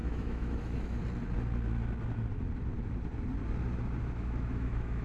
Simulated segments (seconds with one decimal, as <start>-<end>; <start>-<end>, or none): 0.0-1.0; 4.0-5.0